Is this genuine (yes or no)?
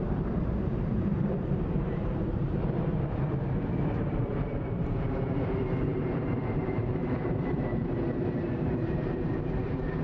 no